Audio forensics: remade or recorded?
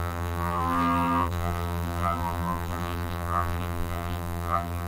remade